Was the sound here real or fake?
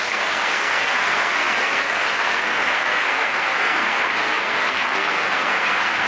fake